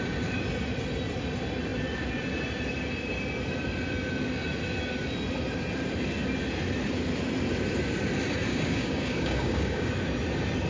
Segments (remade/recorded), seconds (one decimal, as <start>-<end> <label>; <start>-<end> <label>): 0.0-8.5 recorded; 8.5-9.9 remade; 9.9-10.7 recorded